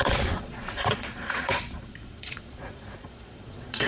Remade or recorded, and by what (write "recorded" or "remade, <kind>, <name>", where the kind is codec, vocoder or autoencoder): remade, vocoder, Vocos